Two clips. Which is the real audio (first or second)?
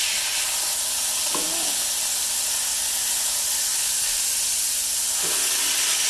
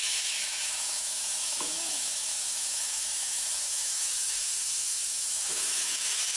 first